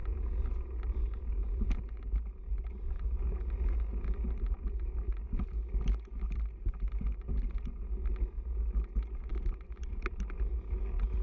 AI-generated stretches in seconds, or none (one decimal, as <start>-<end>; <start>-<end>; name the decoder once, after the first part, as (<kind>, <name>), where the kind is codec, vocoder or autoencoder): none